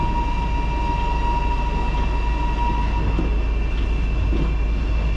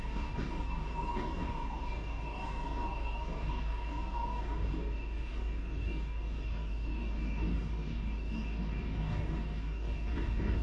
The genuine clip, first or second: first